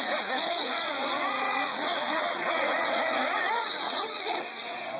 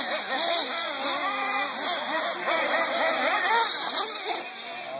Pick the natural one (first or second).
second